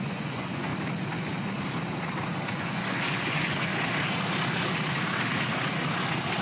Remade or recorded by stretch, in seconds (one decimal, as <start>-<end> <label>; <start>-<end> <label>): 0.0-0.7 remade; 0.7-2.5 recorded; 2.5-3.7 remade; 3.7-6.4 recorded